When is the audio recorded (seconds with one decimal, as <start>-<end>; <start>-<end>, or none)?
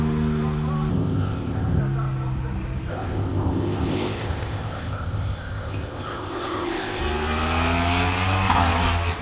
0.0-0.9; 1.8-2.9; 7.0-9.2